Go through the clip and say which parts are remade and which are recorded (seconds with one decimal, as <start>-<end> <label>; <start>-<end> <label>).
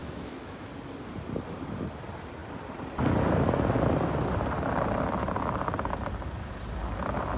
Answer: 0.0-0.7 remade; 0.7-7.4 recorded